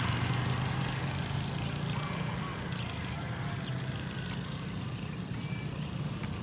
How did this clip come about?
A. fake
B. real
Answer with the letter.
B